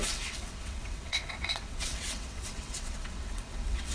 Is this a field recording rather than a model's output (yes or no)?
no